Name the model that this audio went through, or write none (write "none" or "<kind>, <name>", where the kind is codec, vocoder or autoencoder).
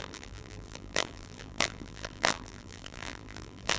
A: vocoder, BigVGAN v2